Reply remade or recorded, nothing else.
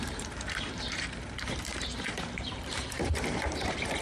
remade